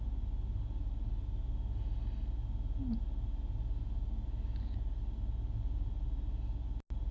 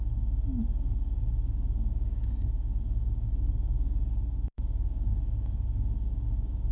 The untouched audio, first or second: first